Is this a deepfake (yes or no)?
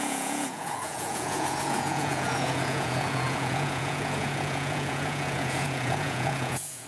yes